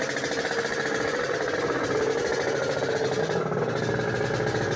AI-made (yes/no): no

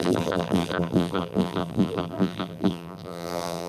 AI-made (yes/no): yes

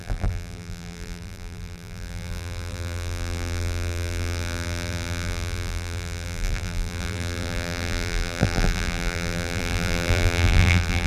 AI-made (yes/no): yes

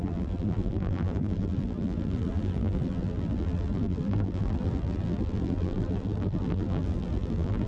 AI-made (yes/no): yes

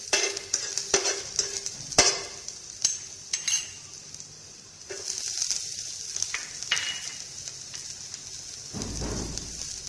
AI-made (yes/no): no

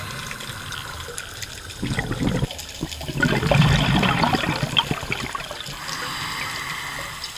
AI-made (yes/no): no